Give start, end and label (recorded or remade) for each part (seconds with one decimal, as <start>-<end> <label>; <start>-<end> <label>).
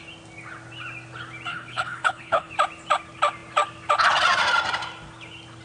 0.0-1.5 recorded; 1.5-2.5 remade; 2.5-5.6 recorded